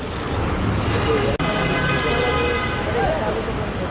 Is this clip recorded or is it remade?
recorded